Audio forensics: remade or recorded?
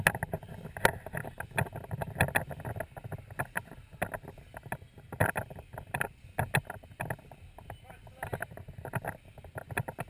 recorded